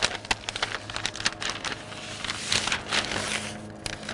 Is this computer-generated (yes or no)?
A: no